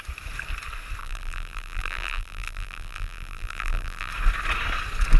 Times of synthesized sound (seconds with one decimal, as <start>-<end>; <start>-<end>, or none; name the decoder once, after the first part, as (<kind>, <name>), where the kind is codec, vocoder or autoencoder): 1.0-4.1 (vocoder, BigVGAN v2)